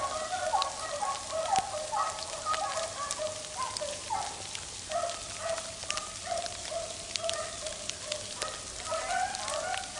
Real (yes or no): yes